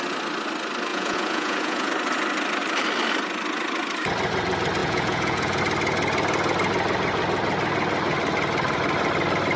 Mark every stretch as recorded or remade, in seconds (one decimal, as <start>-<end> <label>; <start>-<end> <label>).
0.0-0.9 recorded; 0.9-1.9 remade; 1.9-4.8 recorded; 4.8-5.6 remade; 5.6-9.6 recorded